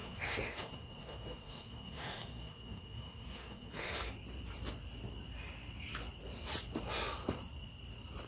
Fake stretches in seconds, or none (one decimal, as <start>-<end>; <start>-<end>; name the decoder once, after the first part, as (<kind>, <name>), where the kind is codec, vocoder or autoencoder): 0.0-4.1 (autoencoder, DAC-VAE)

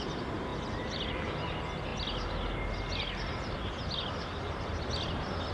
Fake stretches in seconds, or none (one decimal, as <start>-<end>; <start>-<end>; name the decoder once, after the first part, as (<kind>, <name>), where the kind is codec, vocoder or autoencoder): none

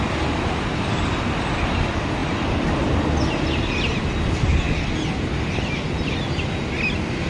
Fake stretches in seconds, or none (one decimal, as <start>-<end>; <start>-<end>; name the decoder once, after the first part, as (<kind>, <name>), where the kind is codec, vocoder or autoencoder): none

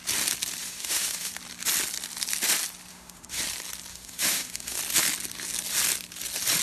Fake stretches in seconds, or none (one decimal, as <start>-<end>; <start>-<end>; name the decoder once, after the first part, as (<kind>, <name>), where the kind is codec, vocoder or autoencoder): 0.6-1.3 (autoencoder, DAC-VAE); 2.9-3.4; 3.9-4.8

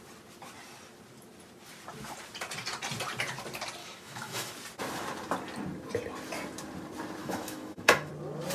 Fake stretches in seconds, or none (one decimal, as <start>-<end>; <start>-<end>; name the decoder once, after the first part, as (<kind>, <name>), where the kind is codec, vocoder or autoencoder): 3.8-4.5 (autoencoder, DAC-VAE); 7.2-8.1